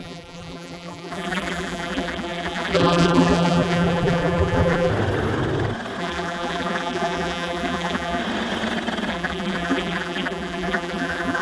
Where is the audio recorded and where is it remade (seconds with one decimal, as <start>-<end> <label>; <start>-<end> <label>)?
0.0-4.9 remade; 4.9-6.0 recorded; 6.0-8.2 remade; 8.2-9.1 recorded; 9.1-11.4 remade